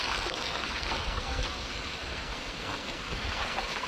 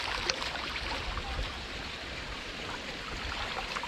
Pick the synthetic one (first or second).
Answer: first